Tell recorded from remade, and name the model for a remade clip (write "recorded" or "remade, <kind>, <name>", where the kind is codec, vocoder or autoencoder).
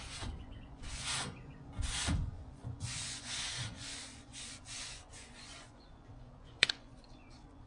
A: remade, vocoder, Vocos